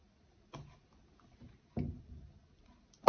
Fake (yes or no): no